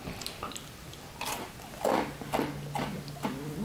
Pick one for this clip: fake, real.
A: real